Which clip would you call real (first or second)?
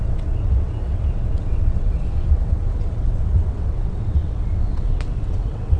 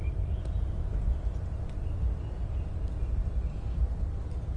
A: second